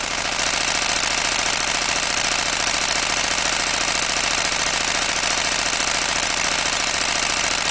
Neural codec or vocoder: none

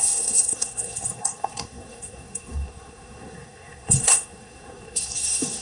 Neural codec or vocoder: codec, SNAC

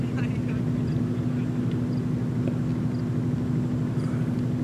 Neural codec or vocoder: none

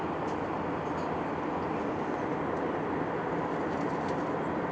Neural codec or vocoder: none